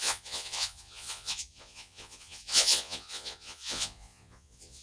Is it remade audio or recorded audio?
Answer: remade